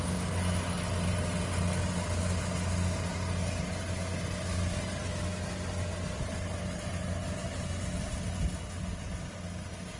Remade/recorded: recorded